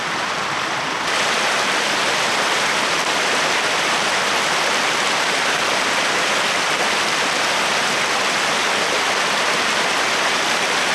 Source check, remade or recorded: remade